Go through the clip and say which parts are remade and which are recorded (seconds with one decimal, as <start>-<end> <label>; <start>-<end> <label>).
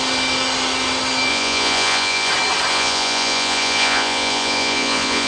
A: 0.0-1.3 recorded; 1.3-2.3 remade; 2.3-2.7 recorded; 2.7-5.3 remade